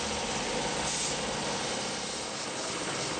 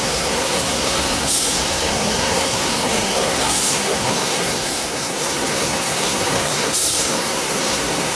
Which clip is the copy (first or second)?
second